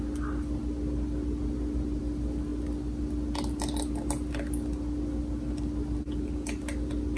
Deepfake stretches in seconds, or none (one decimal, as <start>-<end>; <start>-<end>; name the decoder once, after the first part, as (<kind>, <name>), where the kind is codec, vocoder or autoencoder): none